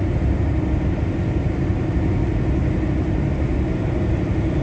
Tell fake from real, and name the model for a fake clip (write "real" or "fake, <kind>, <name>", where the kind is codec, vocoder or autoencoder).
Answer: real